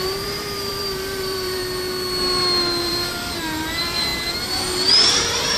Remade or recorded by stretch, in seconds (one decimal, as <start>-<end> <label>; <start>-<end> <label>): 0.0-1.6 remade; 1.6-2.8 recorded; 2.8-4.1 remade; 4.1-5.1 recorded; 5.1-5.6 remade